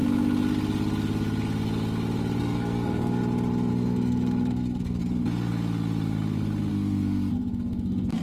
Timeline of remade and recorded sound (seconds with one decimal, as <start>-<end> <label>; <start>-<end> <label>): 0.0-2.4 recorded; 2.4-3.2 remade; 3.2-3.7 recorded; 3.7-5.0 remade; 5.0-6.7 recorded; 6.7-8.2 remade